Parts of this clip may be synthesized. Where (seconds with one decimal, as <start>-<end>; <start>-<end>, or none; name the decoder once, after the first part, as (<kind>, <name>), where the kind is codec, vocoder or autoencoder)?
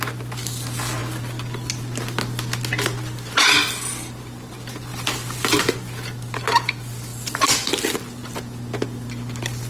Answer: 4.9-5.6 (vocoder, BigVGAN v2); 7.1-7.7